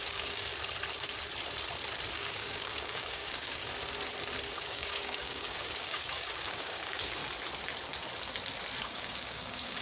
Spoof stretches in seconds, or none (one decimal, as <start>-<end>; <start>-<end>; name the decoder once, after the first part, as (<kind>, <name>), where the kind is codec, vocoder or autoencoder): 0.0-0.5 (codec, DAC); 2.1-3.6; 4.6-7.2; 8.8-9.8